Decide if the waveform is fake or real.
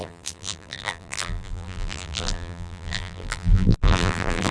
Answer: fake